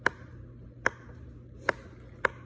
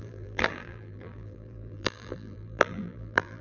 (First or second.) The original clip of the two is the first